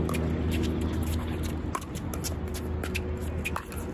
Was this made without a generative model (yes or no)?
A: yes